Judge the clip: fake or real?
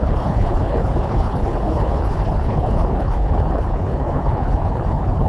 fake